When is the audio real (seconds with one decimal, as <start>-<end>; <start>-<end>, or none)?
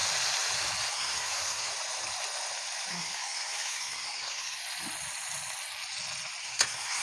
0.0-0.9; 1.7-2.9; 4.6-6.4